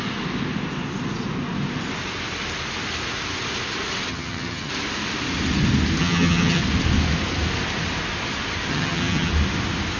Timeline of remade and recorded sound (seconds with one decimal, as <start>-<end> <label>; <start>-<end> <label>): 0.0-4.1 recorded; 4.1-4.7 remade; 4.7-6.0 recorded; 6.0-6.6 remade; 6.6-8.7 recorded; 8.7-9.3 remade; 9.3-10.0 recorded